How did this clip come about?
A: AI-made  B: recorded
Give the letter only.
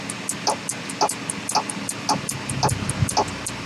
B